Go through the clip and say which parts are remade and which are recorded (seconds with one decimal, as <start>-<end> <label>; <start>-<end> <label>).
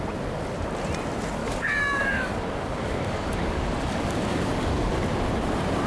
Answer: 0.0-1.4 recorded; 1.4-4.9 remade; 4.9-5.9 recorded